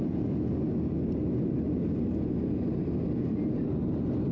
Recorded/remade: recorded